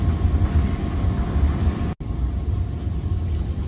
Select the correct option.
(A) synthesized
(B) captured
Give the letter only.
B